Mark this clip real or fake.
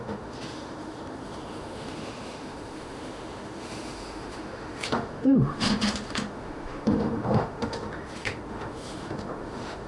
fake